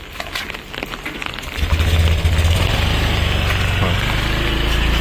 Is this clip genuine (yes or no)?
yes